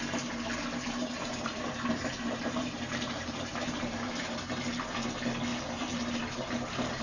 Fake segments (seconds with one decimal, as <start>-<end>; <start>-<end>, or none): 1.0-4.6; 5.5-7.0